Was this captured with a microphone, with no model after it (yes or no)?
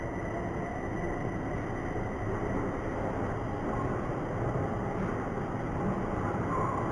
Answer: yes